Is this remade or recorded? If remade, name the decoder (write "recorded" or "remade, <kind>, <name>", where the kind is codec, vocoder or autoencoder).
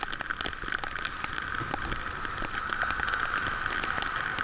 recorded